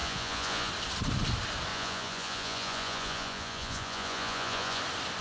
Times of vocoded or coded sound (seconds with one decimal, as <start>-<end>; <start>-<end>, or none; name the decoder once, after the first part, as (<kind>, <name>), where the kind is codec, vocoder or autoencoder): 0.0-0.7 (vocoder, Vocos); 1.7-4.8